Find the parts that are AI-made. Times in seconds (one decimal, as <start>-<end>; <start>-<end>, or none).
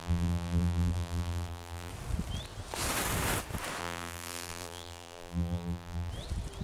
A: 0.0-1.9; 3.8-6.1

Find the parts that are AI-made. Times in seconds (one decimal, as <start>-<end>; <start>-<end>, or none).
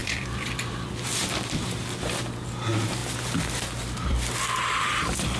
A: 0.0-2.2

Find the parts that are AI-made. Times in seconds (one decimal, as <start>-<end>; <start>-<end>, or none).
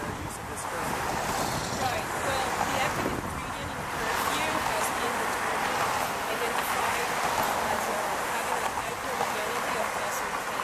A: 1.6-2.5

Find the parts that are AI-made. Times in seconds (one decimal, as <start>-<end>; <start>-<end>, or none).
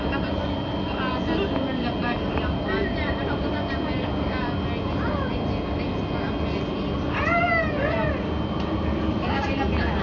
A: 2.0-3.5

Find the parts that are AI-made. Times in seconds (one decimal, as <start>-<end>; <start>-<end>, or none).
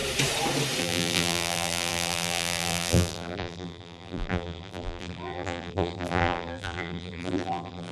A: 0.8-7.9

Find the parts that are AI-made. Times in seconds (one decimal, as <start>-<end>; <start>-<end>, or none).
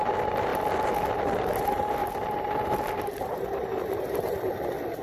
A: 2.0-4.5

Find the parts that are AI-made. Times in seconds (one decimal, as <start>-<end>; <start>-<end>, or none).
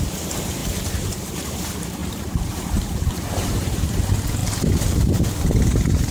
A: 0.0-4.4; 5.6-6.1